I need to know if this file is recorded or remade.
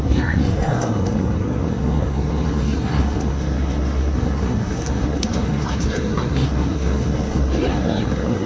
remade